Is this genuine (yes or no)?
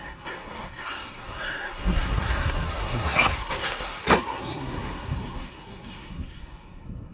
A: no